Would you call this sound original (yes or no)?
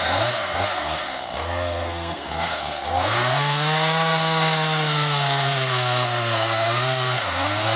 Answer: no